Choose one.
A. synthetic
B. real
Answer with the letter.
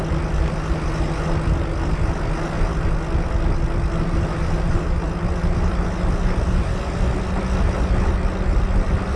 B